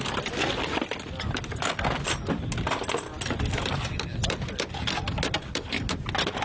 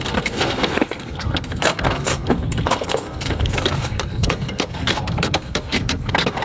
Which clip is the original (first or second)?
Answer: first